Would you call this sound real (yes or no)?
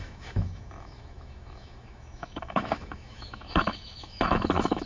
no